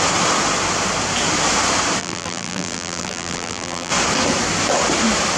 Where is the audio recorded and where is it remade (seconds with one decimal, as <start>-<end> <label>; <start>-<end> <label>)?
0.0-2.0 recorded; 2.0-3.9 remade; 3.9-5.4 recorded